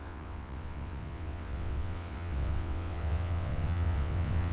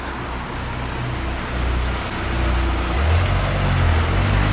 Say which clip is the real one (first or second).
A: second